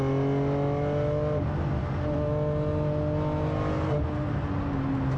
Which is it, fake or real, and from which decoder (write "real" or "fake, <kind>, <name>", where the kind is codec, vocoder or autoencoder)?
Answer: real